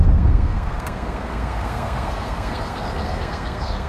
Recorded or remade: remade